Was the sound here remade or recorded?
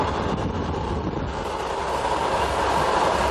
recorded